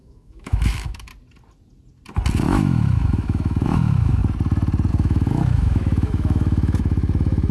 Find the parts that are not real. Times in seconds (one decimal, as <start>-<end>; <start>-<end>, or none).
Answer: 0.0-1.1; 2.3-4.2; 4.9-7.5